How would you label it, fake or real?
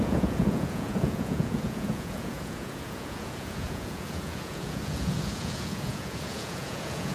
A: fake